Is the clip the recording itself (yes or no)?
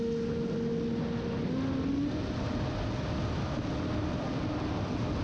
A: yes